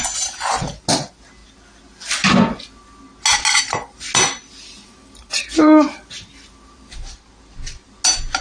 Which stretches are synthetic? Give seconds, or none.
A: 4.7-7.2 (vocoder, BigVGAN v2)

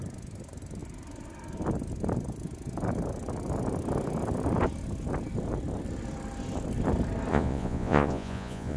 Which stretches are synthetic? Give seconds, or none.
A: 7.3-8.8 (vocoder, Vocos)

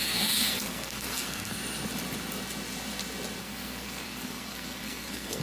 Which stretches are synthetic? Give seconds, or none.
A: 0.0-1.6 (codec, SNAC); 3.4-5.4

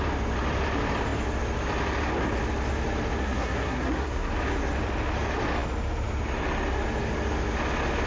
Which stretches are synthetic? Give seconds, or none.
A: 3.2-4.3 (codec, SNAC)

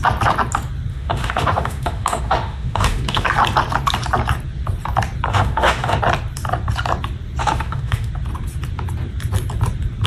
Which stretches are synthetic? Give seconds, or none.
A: 0.9-3.3 (autoencoder, DAC-VAE); 5.3-6.0; 7.4-8.1

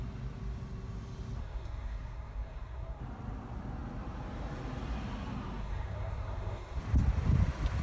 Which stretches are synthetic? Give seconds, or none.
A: 1.4-3.0 (codec, SNAC); 5.6-6.8

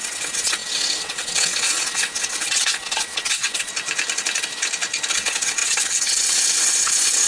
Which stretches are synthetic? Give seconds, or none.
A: 0.0-3.7 (vocoder, WaveNeXt); 5.1-7.3

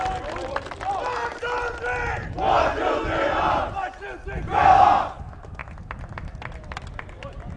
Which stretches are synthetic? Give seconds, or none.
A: none